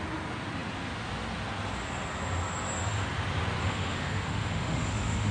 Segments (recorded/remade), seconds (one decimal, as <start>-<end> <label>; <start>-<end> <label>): 0.0-3.6 recorded; 3.6-5.3 remade

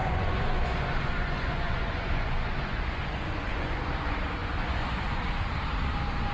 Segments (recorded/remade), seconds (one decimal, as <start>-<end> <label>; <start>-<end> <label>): 0.0-3.8 remade; 3.8-4.4 recorded; 4.4-5.5 remade; 5.5-6.3 recorded

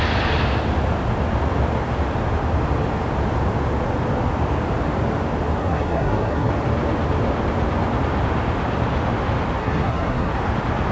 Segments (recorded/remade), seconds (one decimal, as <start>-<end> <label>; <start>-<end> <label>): 0.0-5.6 recorded; 5.6-6.5 remade; 6.5-9.6 recorded; 9.6-10.3 remade; 10.3-10.9 recorded